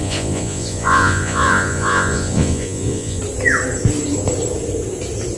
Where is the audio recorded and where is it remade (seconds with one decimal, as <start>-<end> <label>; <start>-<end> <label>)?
0.0-3.2 remade; 3.2-5.4 recorded